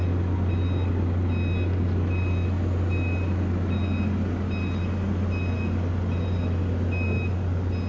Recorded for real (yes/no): yes